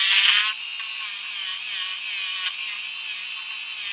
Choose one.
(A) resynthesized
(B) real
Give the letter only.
B